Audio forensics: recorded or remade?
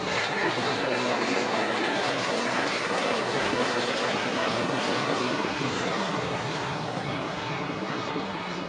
remade